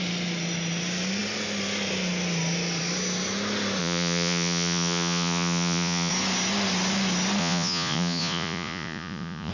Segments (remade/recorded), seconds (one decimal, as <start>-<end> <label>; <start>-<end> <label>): 0.0-3.8 recorded; 3.8-6.1 remade; 6.1-7.4 recorded; 7.4-9.5 remade